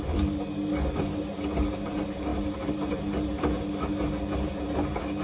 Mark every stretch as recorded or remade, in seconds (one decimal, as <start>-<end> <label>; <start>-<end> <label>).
0.0-2.3 recorded; 2.3-2.9 remade; 2.9-5.2 recorded